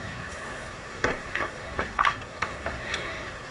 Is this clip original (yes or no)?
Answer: no